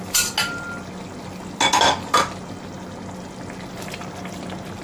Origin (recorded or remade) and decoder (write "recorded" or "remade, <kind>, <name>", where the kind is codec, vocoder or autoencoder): recorded